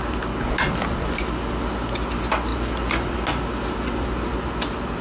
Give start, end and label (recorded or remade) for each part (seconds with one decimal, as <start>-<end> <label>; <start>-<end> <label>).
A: 0.0-5.0 recorded